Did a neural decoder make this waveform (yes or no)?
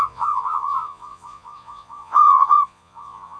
yes